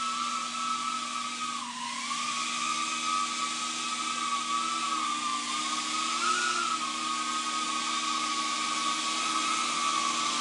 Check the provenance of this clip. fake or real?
real